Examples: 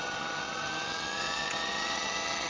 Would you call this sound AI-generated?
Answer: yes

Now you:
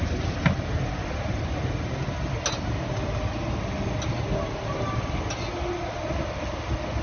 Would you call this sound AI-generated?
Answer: no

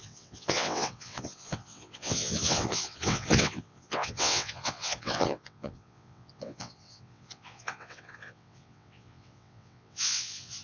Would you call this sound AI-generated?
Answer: yes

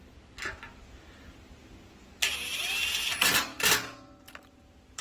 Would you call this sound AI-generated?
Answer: no